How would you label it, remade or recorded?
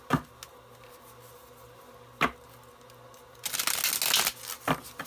recorded